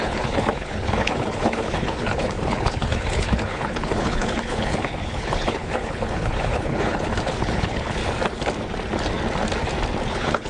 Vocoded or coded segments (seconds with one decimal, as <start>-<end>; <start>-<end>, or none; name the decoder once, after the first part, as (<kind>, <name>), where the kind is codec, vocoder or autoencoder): 0.0-8.0 (codec, HILCodec); 10.1-10.5